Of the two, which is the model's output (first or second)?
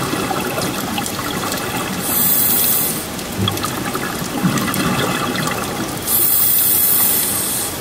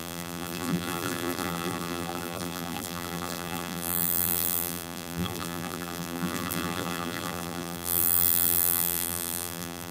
second